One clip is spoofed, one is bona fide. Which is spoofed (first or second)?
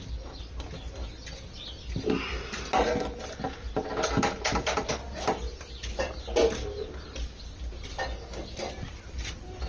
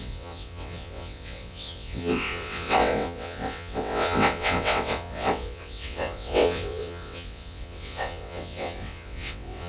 second